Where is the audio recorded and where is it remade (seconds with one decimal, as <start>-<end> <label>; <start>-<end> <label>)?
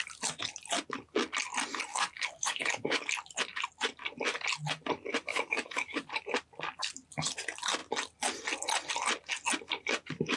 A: 0.0-1.9 recorded; 1.9-3.1 remade; 3.1-5.3 recorded; 5.3-6.1 remade; 6.1-10.4 recorded